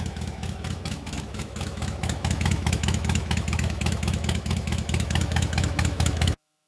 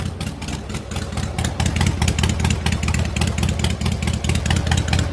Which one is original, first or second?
second